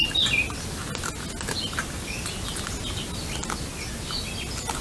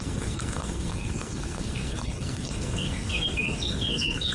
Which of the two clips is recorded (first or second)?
first